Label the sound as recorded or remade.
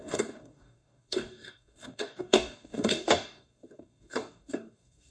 remade